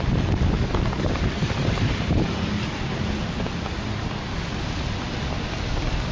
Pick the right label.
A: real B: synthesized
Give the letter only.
A